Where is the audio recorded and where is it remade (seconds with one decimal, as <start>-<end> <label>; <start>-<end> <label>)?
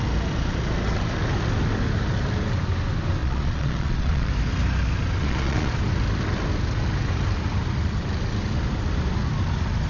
0.0-3.2 recorded; 3.2-4.3 remade; 4.3-5.2 recorded; 5.2-5.7 remade; 5.7-9.9 recorded